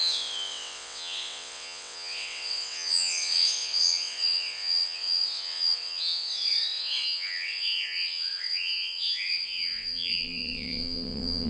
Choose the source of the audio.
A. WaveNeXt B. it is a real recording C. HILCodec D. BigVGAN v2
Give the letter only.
A